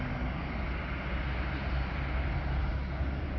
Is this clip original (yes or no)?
yes